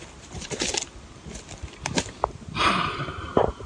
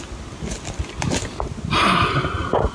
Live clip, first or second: second